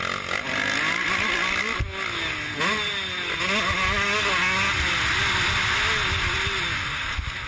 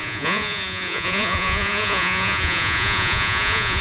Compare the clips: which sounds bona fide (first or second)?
first